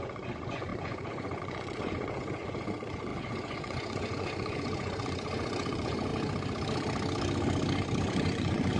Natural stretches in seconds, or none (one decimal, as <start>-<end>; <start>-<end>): 6.1-8.1